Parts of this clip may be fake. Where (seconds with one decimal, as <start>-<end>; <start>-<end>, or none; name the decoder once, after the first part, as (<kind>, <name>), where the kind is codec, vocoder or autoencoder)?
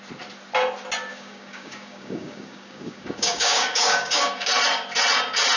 1.1-4.5 (codec, DAC)